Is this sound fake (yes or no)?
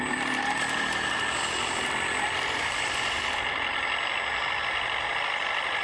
no